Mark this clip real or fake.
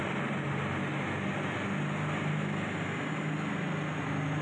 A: real